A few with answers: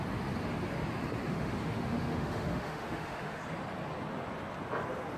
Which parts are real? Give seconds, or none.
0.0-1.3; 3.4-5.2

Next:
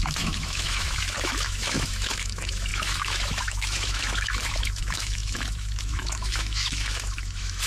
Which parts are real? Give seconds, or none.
none

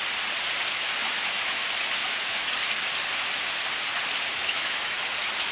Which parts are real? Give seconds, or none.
0.0-1.0; 1.6-2.0; 2.5-4.3; 5.0-5.5

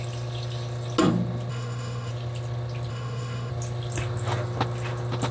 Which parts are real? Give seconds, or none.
0.0-1.5; 2.1-2.9; 3.5-5.3